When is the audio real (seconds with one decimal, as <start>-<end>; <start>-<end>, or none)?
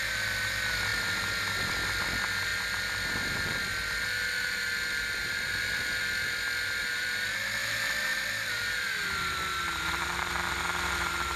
0.0-11.4